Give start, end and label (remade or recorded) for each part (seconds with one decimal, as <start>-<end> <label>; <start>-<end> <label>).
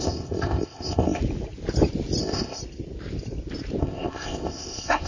0.0-1.2 remade; 1.2-2.2 recorded; 2.2-2.6 remade; 2.6-3.8 recorded; 3.8-5.1 remade